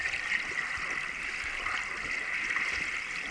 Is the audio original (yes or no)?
yes